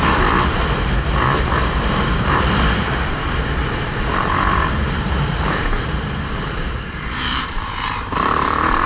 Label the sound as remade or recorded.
remade